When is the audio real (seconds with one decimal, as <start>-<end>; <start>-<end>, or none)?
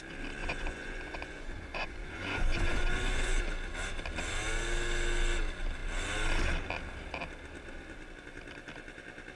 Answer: 0.0-0.4; 3.4-9.4